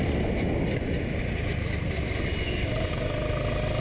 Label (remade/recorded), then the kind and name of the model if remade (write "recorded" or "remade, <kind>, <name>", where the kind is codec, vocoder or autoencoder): recorded